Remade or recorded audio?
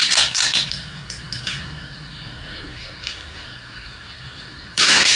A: remade